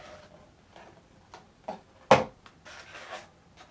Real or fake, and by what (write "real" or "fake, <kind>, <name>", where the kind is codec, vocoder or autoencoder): real